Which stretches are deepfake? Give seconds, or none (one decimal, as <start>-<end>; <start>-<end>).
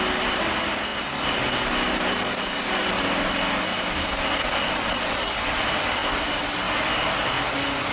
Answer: none